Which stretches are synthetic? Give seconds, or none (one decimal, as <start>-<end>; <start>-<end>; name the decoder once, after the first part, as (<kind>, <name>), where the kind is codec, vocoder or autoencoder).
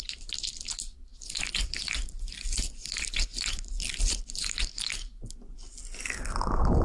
none